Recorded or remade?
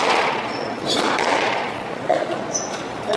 remade